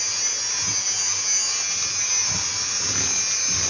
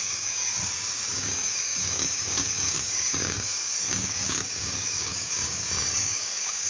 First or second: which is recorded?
first